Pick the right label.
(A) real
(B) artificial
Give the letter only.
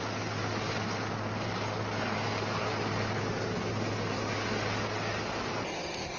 A